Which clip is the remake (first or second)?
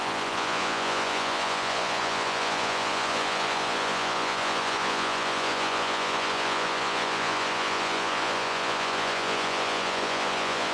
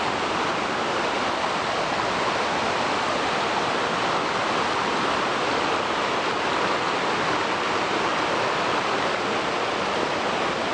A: first